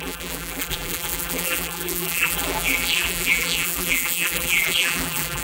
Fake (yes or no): yes